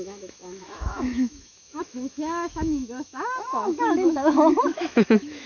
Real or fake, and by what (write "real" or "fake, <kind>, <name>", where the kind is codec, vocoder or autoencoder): fake, autoencoder, DAC-VAE